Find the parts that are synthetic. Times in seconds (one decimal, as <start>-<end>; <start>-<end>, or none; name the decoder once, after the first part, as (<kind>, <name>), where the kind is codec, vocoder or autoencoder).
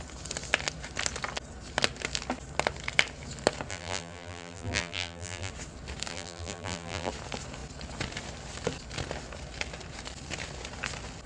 3.7-5.5 (vocoder, BigVGAN v2); 6.1-7.1